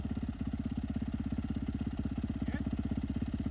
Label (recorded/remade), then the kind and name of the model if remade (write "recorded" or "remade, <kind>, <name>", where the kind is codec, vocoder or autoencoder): recorded